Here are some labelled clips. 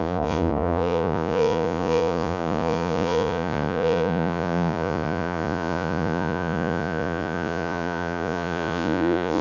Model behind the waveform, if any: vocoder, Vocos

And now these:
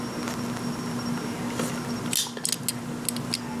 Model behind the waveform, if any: none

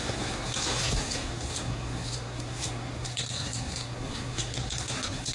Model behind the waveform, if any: codec, SNAC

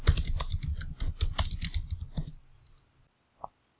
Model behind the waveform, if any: none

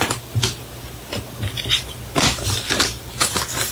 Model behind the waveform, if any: none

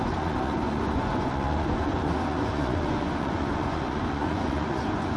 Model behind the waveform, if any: vocoder, Vocos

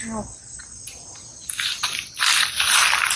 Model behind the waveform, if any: none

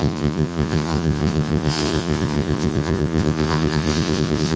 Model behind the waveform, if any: vocoder, Vocos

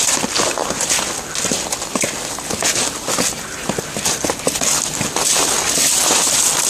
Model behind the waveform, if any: none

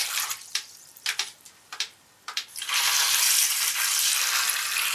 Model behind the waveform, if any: vocoder, BigVGAN v2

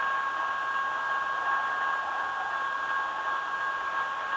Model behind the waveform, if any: none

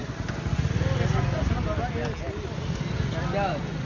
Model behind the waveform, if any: none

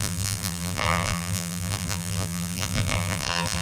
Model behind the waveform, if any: vocoder, BigVGAN v2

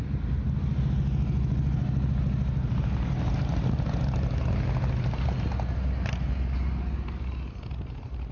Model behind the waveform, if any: none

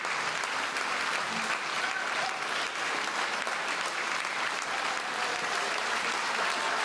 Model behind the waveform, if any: none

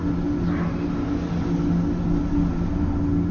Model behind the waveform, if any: none